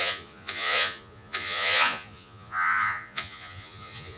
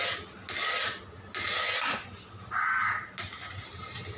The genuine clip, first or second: second